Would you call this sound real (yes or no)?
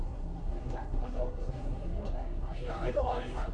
no